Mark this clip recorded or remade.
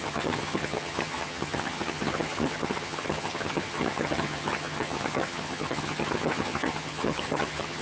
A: remade